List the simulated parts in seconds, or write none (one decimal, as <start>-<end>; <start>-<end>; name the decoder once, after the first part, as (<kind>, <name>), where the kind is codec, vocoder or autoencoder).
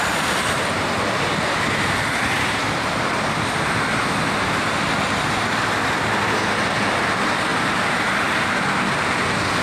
7.5-8.3 (vocoder, BigVGAN v2)